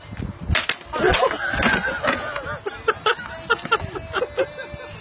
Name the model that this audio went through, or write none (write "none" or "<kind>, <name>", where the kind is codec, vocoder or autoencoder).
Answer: none